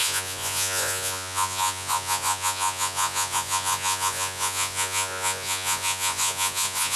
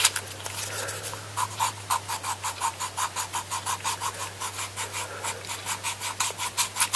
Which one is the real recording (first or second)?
second